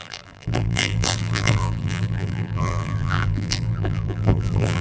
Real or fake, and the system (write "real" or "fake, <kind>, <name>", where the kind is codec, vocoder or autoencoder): fake, vocoder, BigVGAN v2